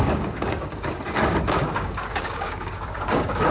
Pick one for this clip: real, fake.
fake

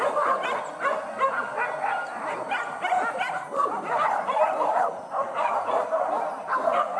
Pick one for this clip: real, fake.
real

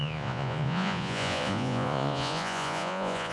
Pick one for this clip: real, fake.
fake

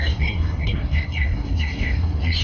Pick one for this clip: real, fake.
fake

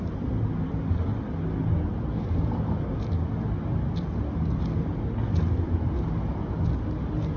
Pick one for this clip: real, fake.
real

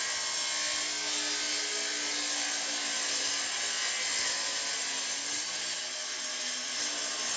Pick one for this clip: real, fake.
real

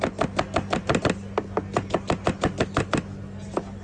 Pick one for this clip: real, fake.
real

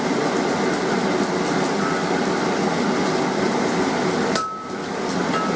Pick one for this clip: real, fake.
real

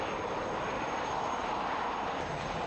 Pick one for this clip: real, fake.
real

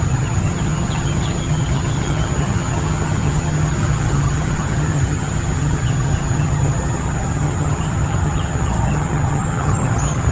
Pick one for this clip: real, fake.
fake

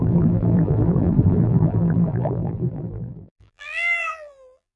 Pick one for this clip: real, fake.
fake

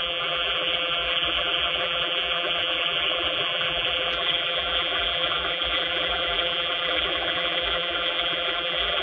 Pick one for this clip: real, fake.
fake